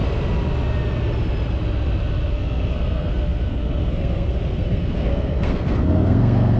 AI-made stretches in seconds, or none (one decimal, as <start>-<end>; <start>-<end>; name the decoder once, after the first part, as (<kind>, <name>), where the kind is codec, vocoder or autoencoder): 2.3-6.6 (codec, SNAC)